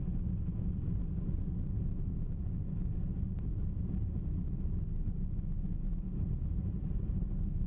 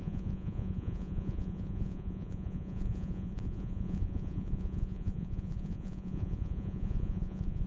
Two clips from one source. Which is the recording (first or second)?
first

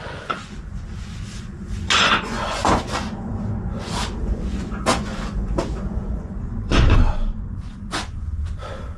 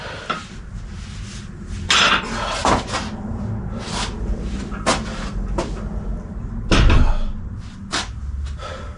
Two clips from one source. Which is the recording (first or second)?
second